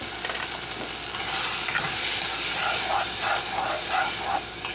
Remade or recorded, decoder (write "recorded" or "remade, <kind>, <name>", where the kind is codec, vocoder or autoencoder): recorded